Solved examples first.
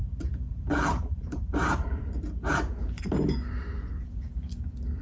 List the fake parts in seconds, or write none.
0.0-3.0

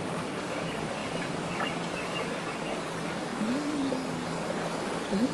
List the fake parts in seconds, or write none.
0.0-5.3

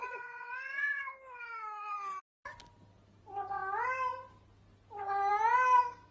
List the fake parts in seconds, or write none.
0.0-1.0

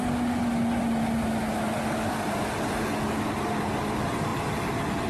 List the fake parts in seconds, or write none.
none

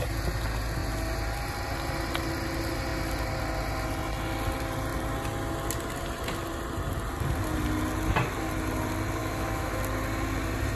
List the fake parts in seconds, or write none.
9.2-9.8

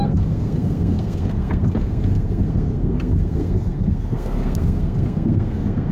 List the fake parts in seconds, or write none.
0.0-5.9

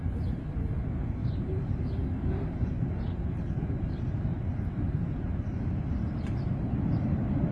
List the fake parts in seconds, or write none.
0.0-7.5

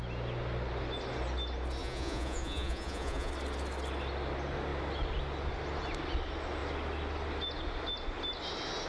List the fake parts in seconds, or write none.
1.8-3.3